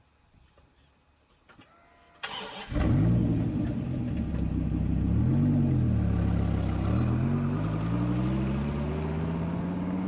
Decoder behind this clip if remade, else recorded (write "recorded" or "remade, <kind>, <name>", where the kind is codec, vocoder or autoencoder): recorded